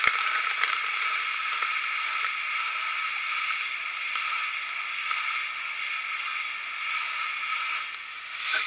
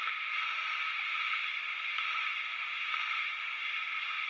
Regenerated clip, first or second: second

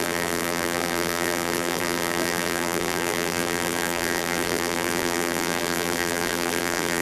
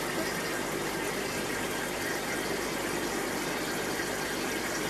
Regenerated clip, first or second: first